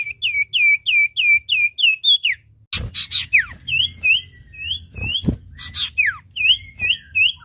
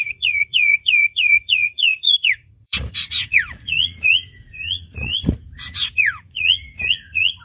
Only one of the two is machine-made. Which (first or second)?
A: second